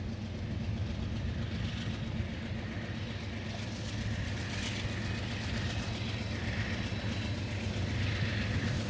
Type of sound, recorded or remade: recorded